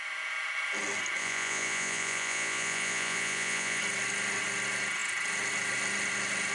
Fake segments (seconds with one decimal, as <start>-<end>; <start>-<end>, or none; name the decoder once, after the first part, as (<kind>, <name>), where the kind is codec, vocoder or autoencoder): 1.2-3.8 (vocoder, Vocos)